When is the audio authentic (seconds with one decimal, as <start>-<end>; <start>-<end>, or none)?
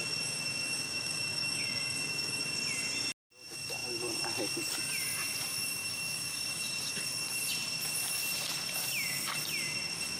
0.0-0.8; 2.4-5.8; 6.7-10.2